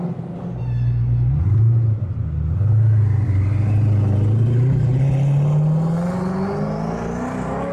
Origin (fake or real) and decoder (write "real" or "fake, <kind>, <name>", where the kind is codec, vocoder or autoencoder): real